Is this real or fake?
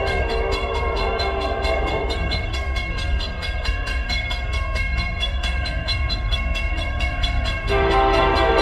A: fake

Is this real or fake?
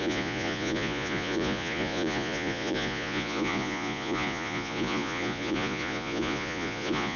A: fake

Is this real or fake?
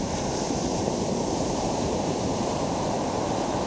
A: fake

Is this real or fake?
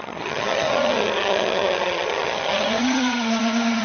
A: fake